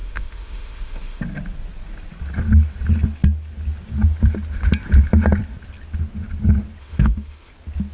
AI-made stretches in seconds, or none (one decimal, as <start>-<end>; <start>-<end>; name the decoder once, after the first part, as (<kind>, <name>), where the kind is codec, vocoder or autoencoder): 0.0-1.2 (autoencoder, DAC-VAE); 6.8-7.5